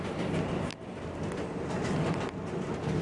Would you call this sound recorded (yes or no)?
yes